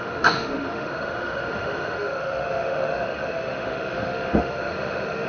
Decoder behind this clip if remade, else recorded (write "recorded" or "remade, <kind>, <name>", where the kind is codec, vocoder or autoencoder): remade, autoencoder, DAC-VAE